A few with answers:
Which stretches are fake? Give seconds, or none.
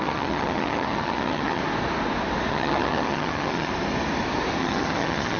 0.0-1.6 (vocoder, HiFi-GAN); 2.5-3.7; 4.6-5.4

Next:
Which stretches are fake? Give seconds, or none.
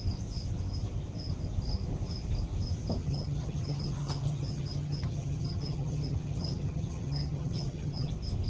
3.0-8.1 (vocoder, HiFi-GAN)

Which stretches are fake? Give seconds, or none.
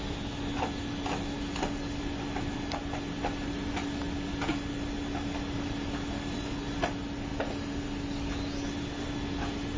none